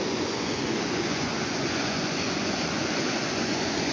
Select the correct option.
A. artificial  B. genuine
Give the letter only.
A